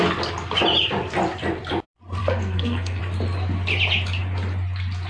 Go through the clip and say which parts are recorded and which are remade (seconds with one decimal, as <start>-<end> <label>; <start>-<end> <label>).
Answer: 0.0-2.2 recorded; 2.2-3.0 remade; 3.0-5.1 recorded